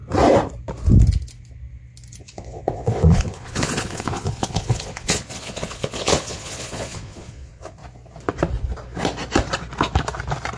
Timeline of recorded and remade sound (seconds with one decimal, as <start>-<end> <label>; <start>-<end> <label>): 0.0-2.2 recorded; 2.2-7.8 remade; 7.8-10.6 recorded